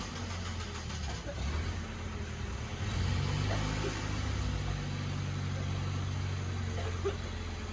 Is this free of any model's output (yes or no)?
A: yes